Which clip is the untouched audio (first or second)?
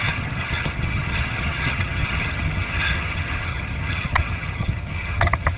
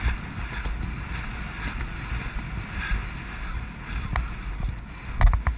second